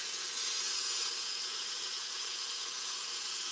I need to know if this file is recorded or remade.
remade